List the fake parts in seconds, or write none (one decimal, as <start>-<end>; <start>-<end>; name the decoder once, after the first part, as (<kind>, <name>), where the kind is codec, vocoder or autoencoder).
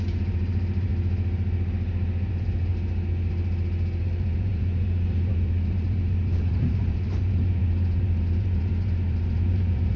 0.0-0.9 (vocoder, BigVGAN v2); 2.3-2.7; 4.0-10.0